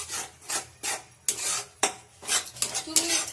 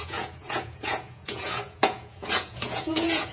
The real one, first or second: first